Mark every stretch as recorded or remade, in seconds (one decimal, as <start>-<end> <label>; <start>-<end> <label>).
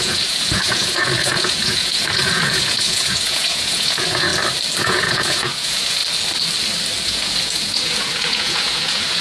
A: 0.0-4.3 remade; 4.3-4.8 recorded; 4.8-6.0 remade; 6.0-7.0 recorded; 7.0-9.2 remade